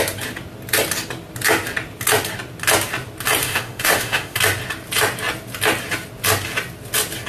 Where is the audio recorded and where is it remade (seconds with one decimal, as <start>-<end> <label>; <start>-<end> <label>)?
0.0-3.4 recorded; 3.4-4.4 remade; 4.4-7.3 recorded